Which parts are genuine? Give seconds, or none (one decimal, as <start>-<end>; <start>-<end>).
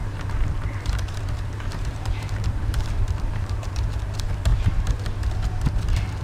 3.7-6.2